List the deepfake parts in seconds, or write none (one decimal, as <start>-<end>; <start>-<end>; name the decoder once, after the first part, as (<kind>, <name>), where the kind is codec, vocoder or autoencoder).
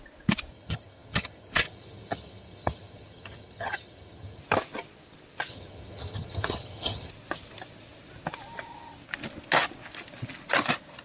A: 0.5-4.4 (vocoder, HiFi-GAN); 5.5-7.1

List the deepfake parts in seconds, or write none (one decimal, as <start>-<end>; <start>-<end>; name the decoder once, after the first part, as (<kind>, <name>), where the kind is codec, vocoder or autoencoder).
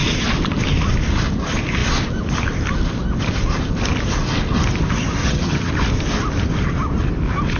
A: 5.2-5.7 (vocoder, HiFi-GAN)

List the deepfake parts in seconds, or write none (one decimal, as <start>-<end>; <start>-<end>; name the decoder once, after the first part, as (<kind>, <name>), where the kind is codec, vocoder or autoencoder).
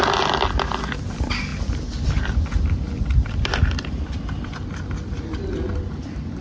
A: none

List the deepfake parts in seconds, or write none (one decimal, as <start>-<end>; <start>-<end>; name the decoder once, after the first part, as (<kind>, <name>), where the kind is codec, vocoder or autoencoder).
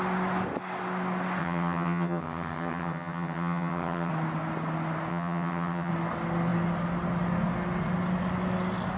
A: 1.4-4.1 (vocoder, HiFi-GAN); 5.1-5.9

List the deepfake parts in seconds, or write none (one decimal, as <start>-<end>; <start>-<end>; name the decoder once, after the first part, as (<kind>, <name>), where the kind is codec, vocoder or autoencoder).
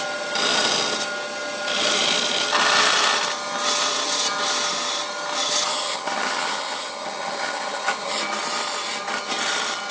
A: 5.7-8.2 (vocoder, HiFi-GAN)